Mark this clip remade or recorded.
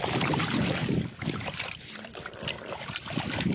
remade